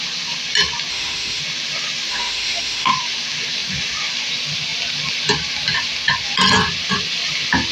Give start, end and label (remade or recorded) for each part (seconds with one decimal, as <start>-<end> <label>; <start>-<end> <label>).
0.0-0.9 recorded; 0.9-1.4 remade; 1.4-2.1 recorded; 2.1-2.9 remade; 2.9-7.7 recorded